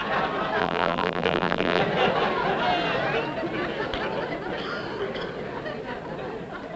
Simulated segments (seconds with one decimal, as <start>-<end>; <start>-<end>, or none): 0.6-1.8